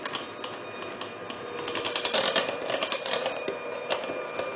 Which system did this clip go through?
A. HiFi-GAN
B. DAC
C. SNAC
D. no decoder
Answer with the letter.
D